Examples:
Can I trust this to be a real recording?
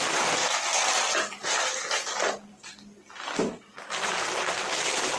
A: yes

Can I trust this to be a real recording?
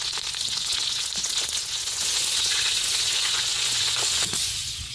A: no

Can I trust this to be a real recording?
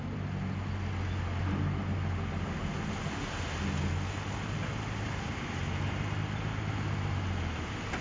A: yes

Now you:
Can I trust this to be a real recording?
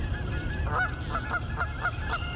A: yes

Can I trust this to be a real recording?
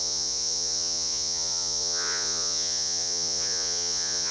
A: no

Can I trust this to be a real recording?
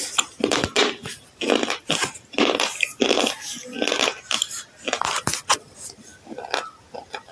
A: yes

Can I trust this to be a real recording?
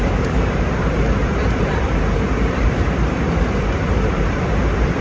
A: no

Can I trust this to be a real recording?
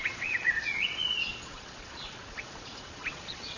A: no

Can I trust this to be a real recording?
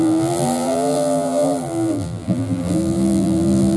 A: no